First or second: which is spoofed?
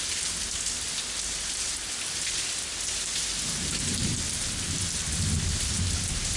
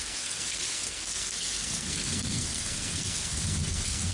second